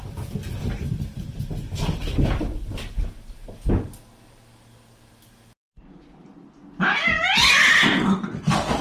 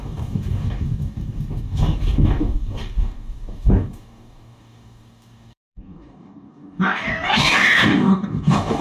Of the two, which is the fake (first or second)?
second